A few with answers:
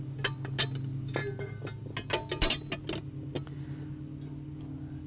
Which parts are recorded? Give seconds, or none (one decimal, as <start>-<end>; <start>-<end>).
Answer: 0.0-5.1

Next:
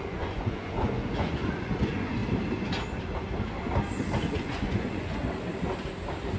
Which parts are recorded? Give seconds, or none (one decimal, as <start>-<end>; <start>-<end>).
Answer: 2.2-4.2; 5.2-6.4

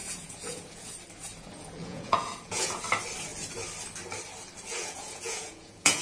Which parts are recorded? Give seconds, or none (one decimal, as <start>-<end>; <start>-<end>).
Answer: 0.9-1.3; 2.8-4.7

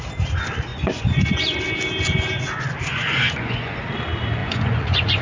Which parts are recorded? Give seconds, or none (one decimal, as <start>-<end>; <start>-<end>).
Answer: 0.0-0.7; 1.6-2.9; 3.8-4.4

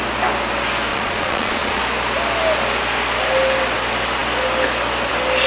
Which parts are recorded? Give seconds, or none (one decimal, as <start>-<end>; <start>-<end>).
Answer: 0.0-0.9; 1.8-5.5